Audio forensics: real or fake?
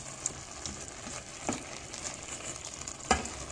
real